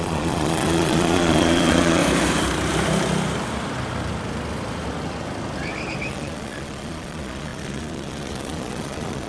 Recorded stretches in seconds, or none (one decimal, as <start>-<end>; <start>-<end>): 2.0-6.1